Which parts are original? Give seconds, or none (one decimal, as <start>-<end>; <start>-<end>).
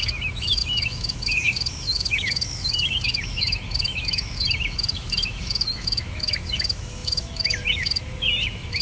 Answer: none